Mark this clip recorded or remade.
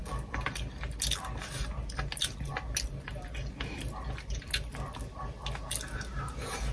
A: recorded